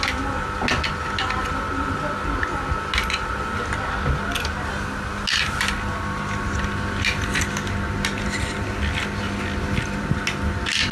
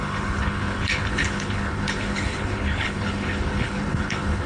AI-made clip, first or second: second